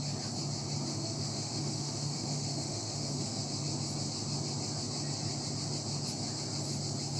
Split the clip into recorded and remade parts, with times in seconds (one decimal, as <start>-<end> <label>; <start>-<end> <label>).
0.0-0.9 recorded; 0.9-3.4 remade; 3.4-7.2 recorded